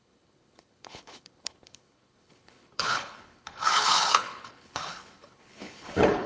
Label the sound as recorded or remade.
remade